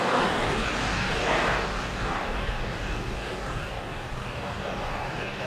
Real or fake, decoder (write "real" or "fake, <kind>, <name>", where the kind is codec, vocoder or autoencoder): fake, codec, DAC